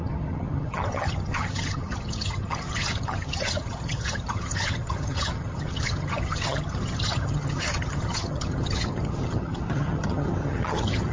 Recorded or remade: remade